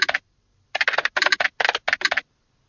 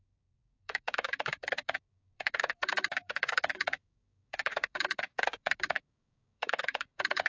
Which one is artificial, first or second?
second